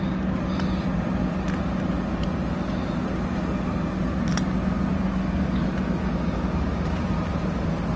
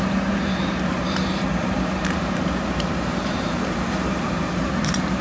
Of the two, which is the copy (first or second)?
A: second